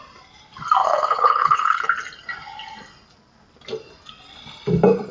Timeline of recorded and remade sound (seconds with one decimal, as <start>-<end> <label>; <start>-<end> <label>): 0.0-0.8 recorded; 0.8-1.9 remade; 1.9-5.1 recorded